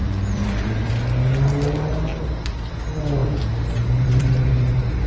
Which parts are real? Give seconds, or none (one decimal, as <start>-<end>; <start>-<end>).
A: 0.9-2.1; 2.7-3.2